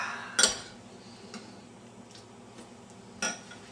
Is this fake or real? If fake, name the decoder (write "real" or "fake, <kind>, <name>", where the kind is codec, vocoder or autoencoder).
real